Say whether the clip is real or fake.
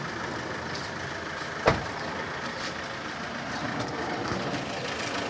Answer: real